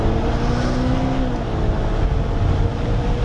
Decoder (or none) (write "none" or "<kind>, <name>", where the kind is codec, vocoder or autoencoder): none